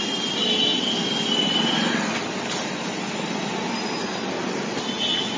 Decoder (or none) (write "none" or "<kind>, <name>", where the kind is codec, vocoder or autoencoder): none